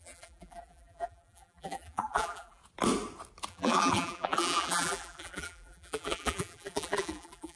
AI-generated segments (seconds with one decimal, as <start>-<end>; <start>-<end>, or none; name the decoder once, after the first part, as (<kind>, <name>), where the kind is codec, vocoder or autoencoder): 0.0-2.6 (vocoder, BigVGAN v2); 3.5-7.6